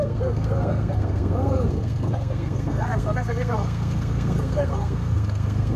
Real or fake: fake